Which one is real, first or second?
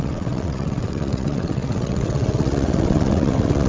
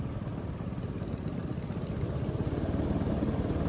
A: second